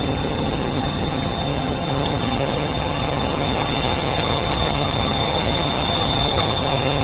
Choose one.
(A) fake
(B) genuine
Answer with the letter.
A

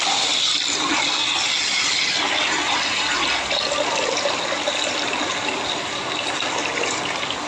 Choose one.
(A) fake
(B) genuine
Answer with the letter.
B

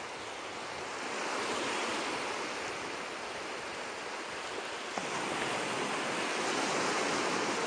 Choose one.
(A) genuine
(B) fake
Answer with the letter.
A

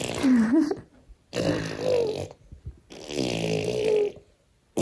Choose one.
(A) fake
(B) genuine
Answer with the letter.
A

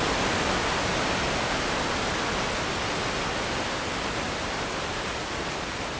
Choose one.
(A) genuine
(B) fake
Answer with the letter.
A